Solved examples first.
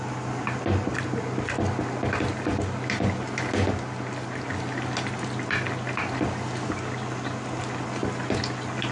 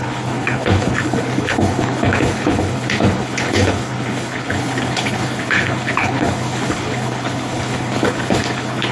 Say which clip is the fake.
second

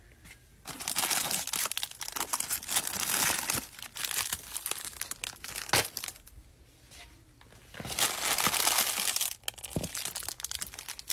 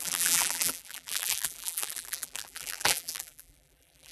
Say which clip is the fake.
second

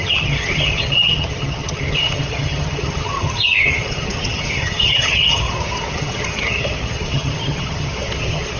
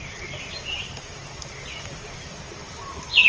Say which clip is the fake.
first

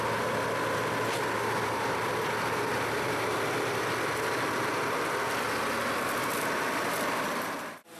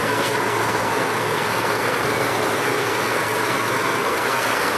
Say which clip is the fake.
second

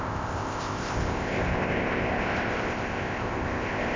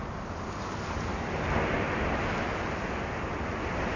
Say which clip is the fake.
first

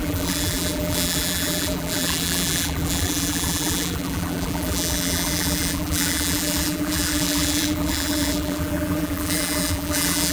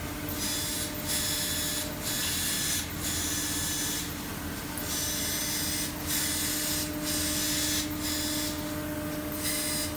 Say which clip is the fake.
first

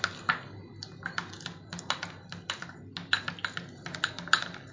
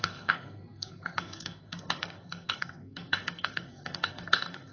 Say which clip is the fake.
second